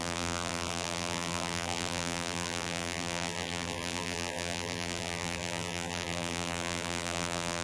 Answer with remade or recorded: remade